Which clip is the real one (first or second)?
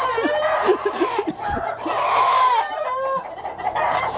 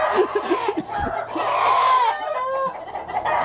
second